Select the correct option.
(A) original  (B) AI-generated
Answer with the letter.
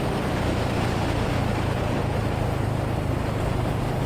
B